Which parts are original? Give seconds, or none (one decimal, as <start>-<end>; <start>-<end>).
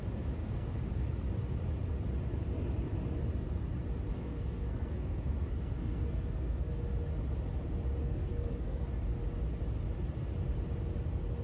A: 0.0-0.4; 0.9-4.1; 6.8-8.0; 8.8-11.4